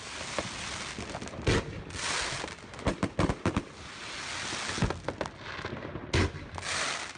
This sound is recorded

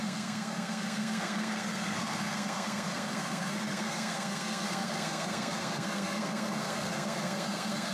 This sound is remade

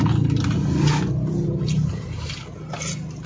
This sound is recorded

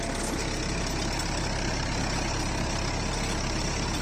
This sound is recorded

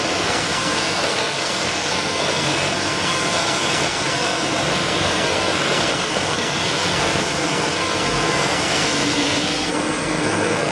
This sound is remade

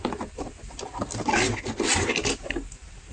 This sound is recorded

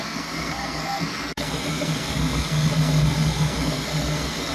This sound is remade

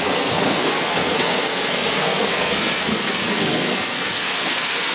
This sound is remade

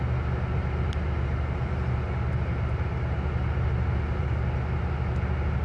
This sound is recorded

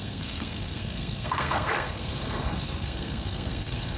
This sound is remade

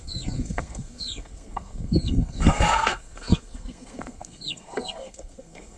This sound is remade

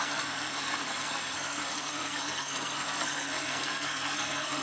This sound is remade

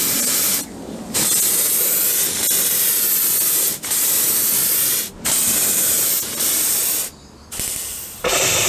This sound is recorded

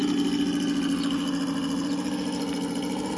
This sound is recorded